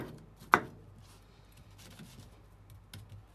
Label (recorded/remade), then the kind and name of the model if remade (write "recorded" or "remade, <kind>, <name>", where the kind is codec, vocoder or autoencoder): recorded